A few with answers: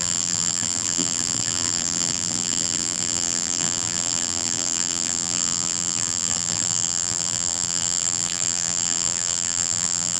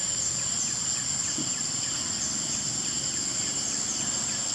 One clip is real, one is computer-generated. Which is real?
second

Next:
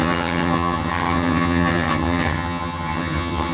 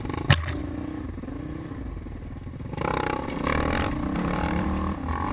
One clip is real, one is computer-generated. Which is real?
second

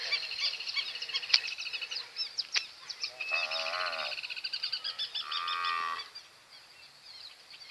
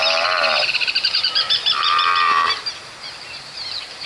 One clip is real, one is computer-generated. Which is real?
first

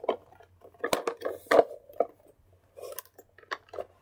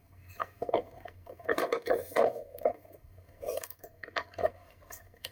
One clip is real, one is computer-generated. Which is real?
first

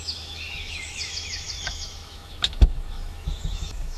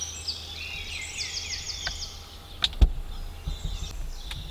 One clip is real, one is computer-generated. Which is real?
second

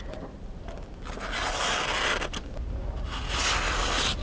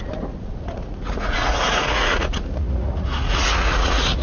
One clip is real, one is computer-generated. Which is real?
first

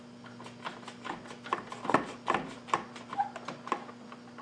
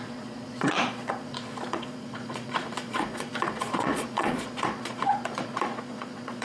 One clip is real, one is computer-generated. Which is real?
first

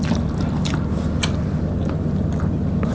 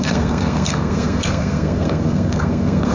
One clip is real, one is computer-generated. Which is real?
first